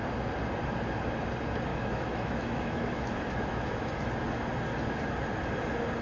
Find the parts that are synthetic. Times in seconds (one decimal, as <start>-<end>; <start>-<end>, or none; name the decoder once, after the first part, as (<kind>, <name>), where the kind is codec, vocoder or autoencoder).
1.7-4.3 (autoencoder, DAC-VAE)